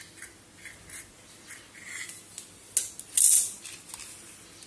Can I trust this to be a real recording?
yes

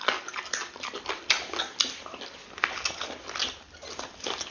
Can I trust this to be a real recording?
yes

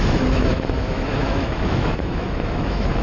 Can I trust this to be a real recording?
no